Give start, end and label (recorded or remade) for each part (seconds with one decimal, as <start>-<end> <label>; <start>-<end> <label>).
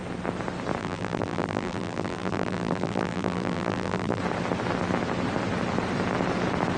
0.0-0.8 recorded; 0.8-4.2 remade; 4.2-6.8 recorded